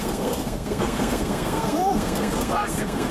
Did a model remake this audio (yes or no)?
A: yes